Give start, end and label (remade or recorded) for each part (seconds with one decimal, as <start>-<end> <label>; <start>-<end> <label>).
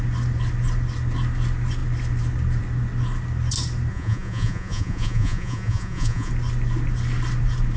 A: 0.0-3.9 recorded; 3.9-6.3 remade; 6.3-7.8 recorded